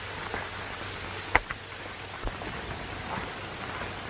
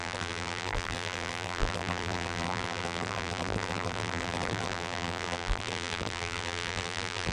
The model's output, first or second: second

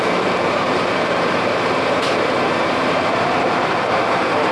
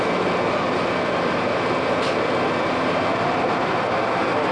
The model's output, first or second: first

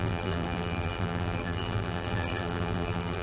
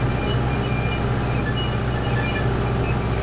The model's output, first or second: first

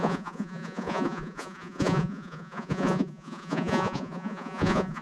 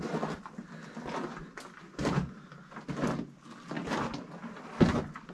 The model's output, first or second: first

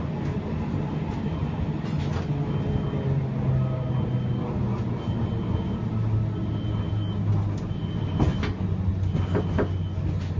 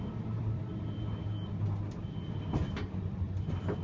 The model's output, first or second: second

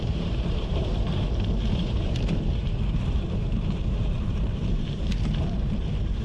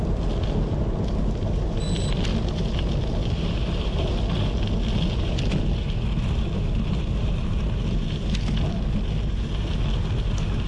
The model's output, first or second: first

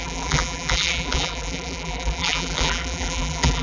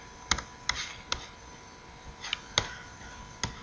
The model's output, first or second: first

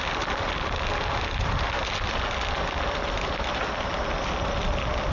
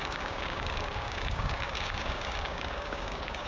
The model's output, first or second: second